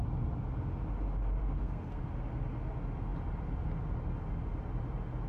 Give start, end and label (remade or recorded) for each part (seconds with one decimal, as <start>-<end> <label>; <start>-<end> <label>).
0.0-1.4 recorded; 1.4-2.0 remade; 2.0-5.3 recorded